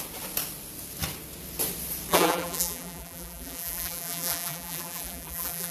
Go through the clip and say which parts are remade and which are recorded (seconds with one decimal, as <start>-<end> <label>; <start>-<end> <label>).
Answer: 0.0-2.1 recorded; 2.1-5.7 remade